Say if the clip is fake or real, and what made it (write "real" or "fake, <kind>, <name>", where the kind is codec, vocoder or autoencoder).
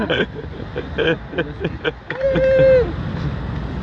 real